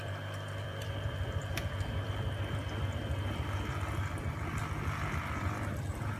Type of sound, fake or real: fake